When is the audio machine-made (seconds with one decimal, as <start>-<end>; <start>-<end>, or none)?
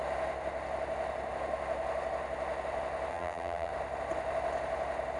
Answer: 3.1-3.7